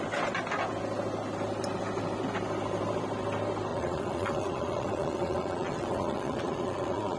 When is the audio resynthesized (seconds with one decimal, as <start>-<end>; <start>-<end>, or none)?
3.7-7.2

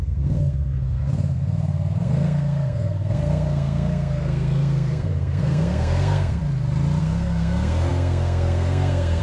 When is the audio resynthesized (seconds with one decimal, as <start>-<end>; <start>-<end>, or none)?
0.0-6.4; 7.0-9.2

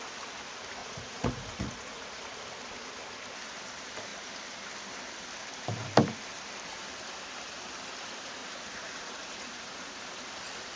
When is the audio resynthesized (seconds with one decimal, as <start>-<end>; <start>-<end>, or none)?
0.8-2.2; 8.4-10.0

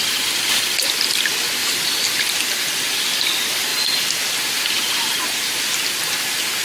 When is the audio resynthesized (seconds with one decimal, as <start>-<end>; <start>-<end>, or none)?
none

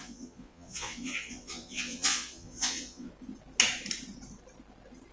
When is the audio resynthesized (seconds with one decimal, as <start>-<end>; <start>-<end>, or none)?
0.0-3.1

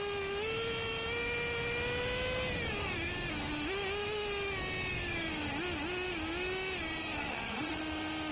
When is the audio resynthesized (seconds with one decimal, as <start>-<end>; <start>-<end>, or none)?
7.2-7.8

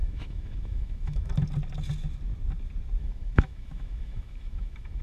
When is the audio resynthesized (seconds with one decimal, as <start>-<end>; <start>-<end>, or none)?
0.0-1.3; 3.0-5.0

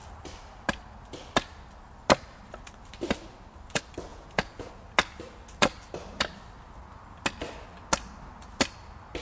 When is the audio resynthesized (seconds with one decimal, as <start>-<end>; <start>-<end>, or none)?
4.1-4.7